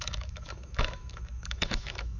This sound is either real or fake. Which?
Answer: fake